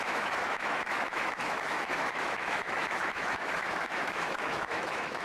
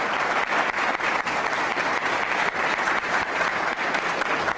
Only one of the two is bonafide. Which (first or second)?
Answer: second